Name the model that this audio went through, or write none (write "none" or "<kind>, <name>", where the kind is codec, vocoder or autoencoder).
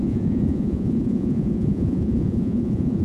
vocoder, Vocos